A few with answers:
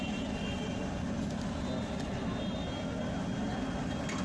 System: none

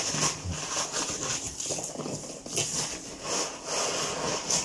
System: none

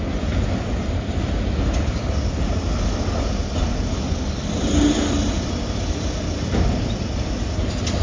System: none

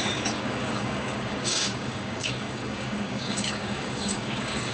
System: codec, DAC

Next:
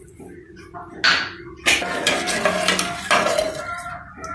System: none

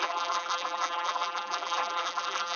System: vocoder, BigVGAN v2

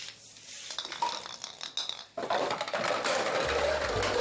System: none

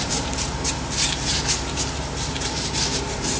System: vocoder, BigVGAN v2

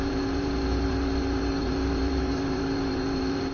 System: vocoder, BigVGAN v2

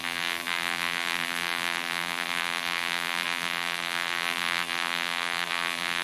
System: vocoder, BigVGAN v2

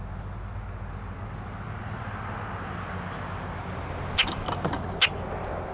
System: none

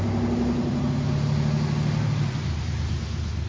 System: none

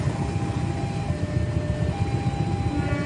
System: none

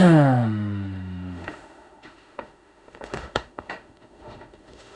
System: autoencoder, DAC-VAE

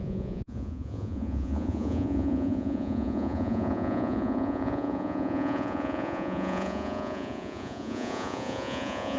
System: vocoder, Vocos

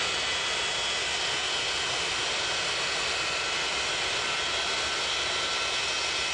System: none